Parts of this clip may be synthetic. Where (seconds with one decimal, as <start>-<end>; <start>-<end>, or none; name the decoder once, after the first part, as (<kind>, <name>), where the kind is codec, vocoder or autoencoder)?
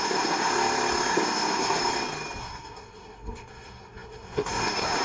0.0-0.5 (codec, SNAC); 1.1-1.8; 2.4-5.0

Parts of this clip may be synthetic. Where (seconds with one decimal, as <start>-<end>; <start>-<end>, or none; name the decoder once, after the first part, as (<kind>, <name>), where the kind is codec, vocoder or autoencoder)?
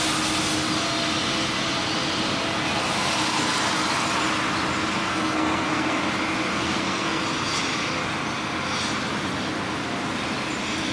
4.9-6.0 (codec, SNAC); 6.5-7.2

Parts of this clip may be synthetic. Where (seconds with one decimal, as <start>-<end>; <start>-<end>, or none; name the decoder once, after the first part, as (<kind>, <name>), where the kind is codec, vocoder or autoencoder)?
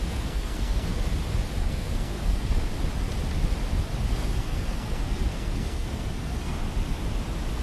0.0-1.1 (codec, SNAC); 1.6-2.7; 4.1-6.6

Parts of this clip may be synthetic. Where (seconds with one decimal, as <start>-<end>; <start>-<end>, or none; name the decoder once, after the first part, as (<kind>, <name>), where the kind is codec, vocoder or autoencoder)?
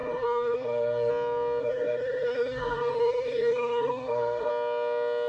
0.0-1.1 (codec, SNAC); 1.6-4.5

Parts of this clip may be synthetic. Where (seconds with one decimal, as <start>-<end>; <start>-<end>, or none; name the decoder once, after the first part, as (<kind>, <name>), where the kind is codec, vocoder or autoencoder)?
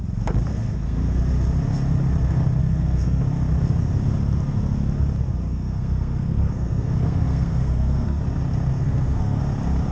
0.5-1.2 (codec, SNAC); 2.6-3.2; 5.5-8.2; 8.7-9.4